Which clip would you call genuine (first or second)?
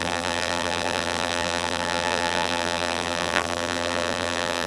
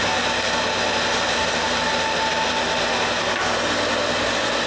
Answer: second